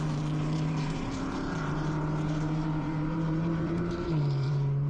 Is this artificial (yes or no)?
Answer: yes